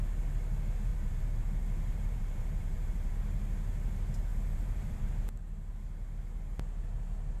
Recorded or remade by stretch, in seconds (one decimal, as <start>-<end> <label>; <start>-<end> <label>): 0.0-0.9 recorded; 0.9-3.1 remade; 3.1-4.3 recorded; 4.3-5.1 remade; 5.1-7.4 recorded

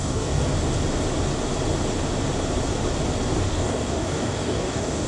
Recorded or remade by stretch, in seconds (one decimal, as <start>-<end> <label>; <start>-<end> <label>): 0.0-0.4 remade; 0.4-3.5 recorded; 3.5-5.1 remade

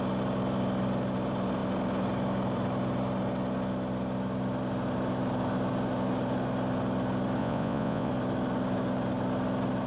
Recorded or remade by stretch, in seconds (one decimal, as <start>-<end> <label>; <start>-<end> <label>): 0.0-7.4 recorded; 7.4-8.1 remade; 8.1-9.9 recorded

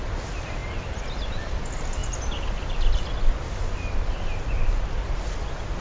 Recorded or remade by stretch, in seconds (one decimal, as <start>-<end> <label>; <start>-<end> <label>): 0.0-5.8 recorded